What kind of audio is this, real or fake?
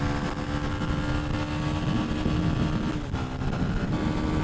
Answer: real